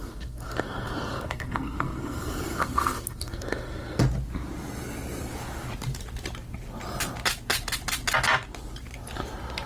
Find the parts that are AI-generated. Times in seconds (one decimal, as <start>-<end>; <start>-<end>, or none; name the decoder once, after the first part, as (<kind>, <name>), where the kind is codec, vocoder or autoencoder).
0.0-4.0 (codec, SNAC)